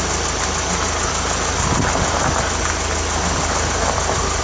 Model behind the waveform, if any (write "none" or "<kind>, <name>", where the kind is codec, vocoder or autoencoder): none